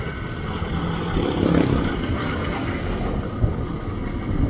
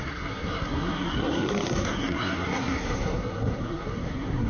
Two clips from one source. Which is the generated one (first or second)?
second